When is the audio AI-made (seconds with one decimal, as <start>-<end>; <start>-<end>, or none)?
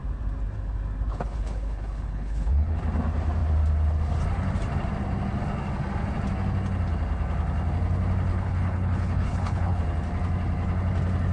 1.1-2.8; 8.3-9.8